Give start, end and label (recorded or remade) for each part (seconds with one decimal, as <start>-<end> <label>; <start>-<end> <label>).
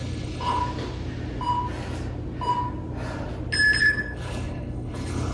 0.0-0.6 remade; 0.6-3.8 recorded; 3.8-5.3 remade